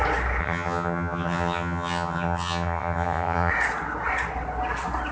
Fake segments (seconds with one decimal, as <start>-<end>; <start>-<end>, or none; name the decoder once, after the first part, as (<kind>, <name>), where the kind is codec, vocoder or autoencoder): 0.4-3.5 (vocoder, HiFi-GAN)